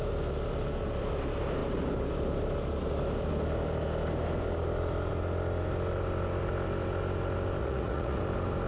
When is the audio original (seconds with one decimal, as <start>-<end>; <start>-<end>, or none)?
0.0-7.6; 8.2-8.7

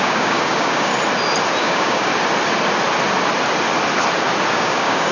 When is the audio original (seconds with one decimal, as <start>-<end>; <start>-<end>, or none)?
0.9-1.6; 2.1-4.5

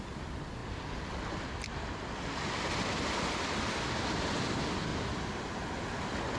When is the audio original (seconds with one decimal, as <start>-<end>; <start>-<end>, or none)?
0.0-6.4

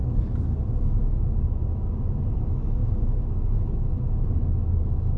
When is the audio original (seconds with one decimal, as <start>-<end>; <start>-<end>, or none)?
none

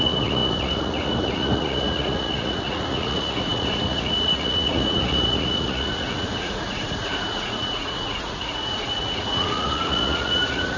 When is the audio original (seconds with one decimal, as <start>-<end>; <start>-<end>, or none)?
none

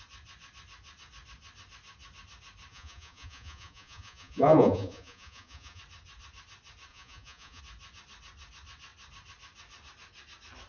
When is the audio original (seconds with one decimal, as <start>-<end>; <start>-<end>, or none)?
0.0-2.7; 5.8-6.9; 7.6-10.7

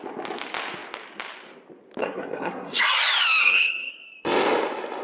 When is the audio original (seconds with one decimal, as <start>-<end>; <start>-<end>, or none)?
0.0-2.0; 2.8-3.4; 3.9-5.0